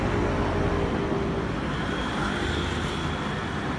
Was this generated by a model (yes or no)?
no